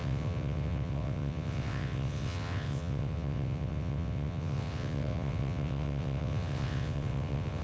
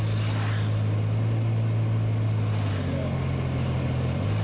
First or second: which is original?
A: second